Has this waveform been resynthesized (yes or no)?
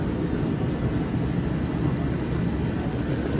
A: no